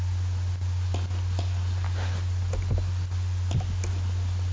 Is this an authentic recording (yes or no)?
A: yes